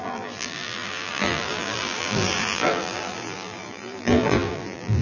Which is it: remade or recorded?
remade